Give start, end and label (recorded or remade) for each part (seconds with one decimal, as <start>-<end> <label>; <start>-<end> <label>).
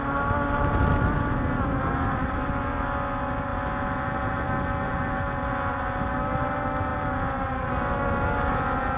0.0-9.0 recorded